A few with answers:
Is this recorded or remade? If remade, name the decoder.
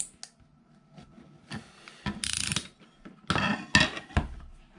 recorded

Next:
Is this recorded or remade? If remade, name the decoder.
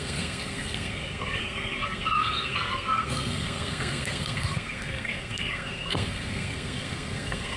remade, codec, SNAC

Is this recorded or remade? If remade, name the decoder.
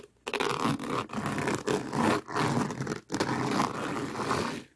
recorded